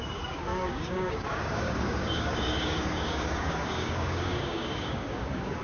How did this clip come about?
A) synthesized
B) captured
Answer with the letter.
A